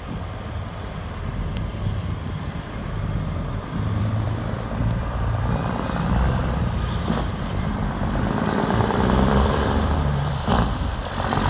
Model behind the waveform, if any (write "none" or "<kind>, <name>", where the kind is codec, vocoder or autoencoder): vocoder, BigVGAN v2